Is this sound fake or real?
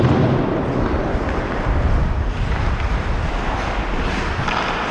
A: real